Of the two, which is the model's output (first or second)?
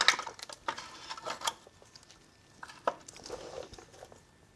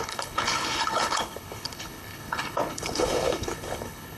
second